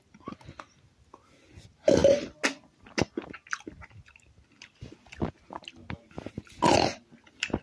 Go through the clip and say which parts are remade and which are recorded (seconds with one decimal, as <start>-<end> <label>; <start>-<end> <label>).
0.0-7.6 recorded